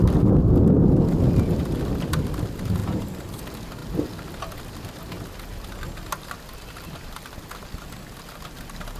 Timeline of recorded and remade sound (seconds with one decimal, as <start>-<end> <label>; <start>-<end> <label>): 0.0-2.8 recorded; 2.8-3.4 remade; 3.4-9.0 recorded